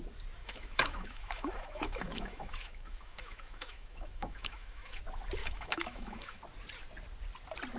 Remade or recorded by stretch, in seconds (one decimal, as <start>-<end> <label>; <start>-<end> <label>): 0.0-0.4 recorded; 0.4-5.0 remade; 5.0-5.4 recorded; 5.4-6.4 remade; 6.4-7.8 recorded